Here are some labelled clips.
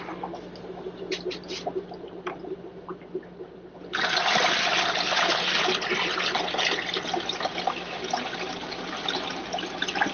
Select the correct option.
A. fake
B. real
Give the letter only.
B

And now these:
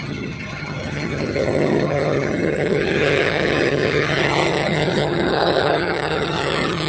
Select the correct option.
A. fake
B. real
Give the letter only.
A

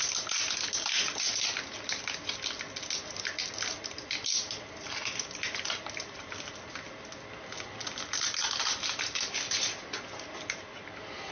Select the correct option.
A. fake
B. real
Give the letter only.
B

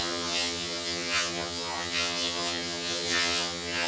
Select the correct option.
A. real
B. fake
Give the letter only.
B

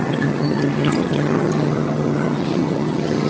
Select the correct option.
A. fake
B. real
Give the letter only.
A